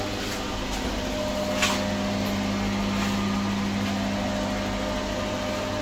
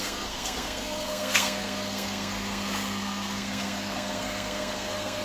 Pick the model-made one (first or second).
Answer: second